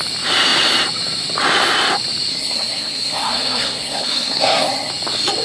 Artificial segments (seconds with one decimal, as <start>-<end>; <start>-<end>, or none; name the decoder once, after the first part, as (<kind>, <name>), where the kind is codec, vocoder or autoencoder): 2.3-4.9 (codec, SNAC)